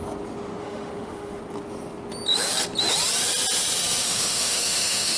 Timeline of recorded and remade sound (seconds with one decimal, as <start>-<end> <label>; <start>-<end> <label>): 0.0-0.6 recorded; 0.6-1.4 remade; 1.4-4.0 recorded; 4.0-5.2 remade